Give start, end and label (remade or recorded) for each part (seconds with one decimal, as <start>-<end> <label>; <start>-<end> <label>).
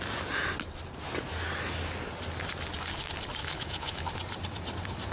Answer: 0.0-3.4 recorded; 3.4-4.1 remade; 4.1-5.1 recorded